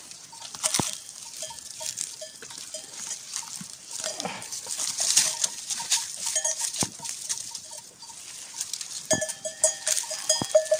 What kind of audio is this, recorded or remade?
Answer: remade